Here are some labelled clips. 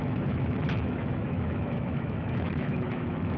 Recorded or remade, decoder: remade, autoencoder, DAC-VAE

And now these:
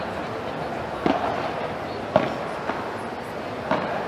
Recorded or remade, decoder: recorded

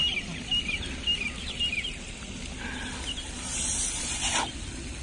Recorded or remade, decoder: recorded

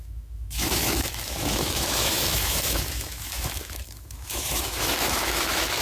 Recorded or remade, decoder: remade, autoencoder, DAC-VAE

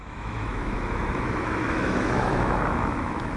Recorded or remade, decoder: remade, autoencoder, DAC-VAE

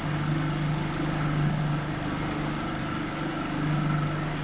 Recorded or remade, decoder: recorded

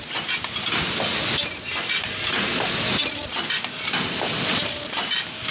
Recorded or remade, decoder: recorded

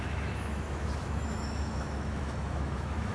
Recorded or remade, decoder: remade, autoencoder, DAC-VAE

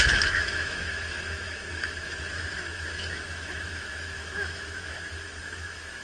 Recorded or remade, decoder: remade, autoencoder, DAC-VAE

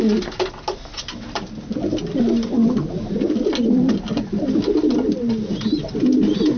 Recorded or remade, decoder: recorded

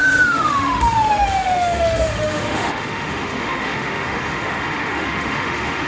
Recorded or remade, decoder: remade, autoencoder, DAC-VAE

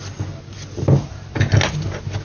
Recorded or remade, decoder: recorded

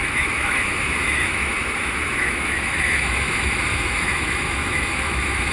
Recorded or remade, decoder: remade, autoencoder, DAC-VAE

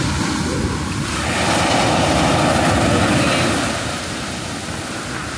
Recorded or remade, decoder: recorded